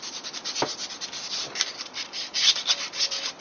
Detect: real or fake real